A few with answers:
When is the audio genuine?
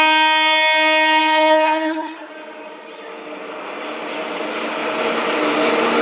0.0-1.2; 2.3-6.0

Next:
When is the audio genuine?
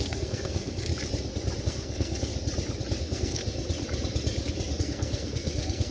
0.9-1.6; 2.3-3.0; 3.4-4.8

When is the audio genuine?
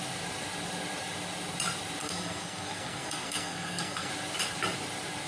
0.0-2.0; 4.1-5.3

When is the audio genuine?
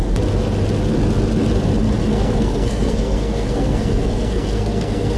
0.0-2.0